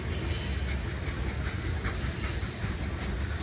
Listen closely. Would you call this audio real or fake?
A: real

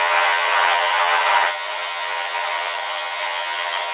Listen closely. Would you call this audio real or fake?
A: fake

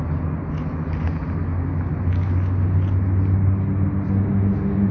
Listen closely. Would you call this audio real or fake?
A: real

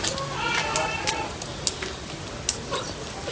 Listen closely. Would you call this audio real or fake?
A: real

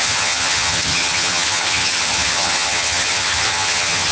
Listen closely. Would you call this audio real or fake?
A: fake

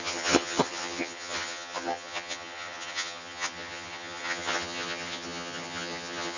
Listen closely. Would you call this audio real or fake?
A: fake